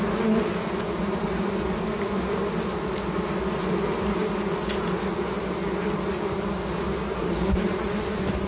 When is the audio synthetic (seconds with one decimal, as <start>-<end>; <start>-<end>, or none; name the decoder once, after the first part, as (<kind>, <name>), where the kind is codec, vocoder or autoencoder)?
7.2-8.5 (vocoder, BigVGAN v2)